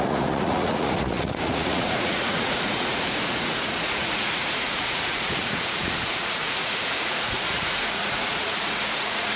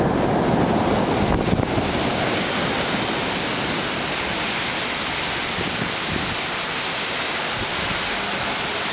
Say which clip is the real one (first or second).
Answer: second